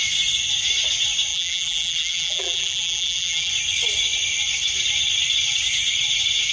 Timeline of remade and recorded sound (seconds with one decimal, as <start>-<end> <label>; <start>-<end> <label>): 0.0-1.3 recorded; 1.3-3.5 remade; 3.5-6.5 recorded